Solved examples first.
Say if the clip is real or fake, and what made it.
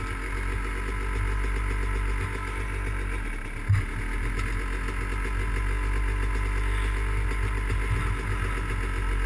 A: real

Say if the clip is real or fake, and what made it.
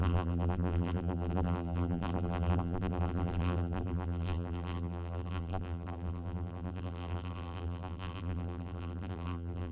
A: fake, vocoder, BigVGAN v2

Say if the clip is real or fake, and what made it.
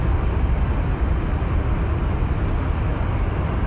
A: real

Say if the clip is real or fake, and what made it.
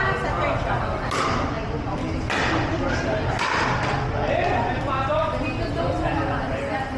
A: real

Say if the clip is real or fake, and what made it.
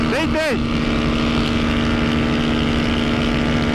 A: real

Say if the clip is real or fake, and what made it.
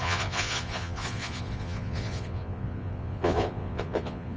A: fake, vocoder, Vocos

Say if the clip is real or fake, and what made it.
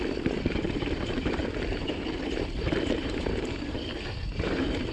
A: fake, vocoder, BigVGAN v2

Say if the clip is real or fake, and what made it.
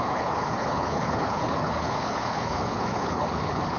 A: fake, codec, HILCodec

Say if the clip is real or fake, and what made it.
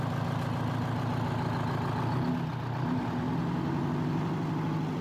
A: real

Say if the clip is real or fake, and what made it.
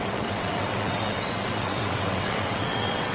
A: fake, vocoder, WaveNeXt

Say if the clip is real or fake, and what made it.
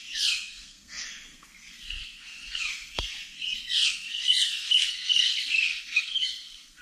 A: fake, codec, SNAC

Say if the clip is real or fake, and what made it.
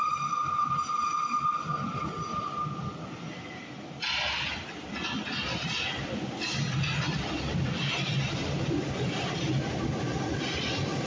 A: real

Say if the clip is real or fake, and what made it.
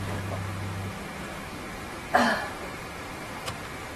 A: real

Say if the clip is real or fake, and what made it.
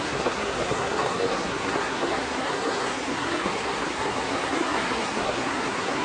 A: fake, codec, SNAC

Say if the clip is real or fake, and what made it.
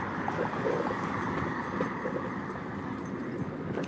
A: real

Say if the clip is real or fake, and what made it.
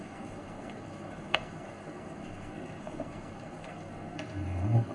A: fake, codec, SNAC